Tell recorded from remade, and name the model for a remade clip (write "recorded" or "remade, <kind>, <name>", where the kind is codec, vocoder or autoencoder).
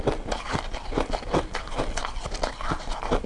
recorded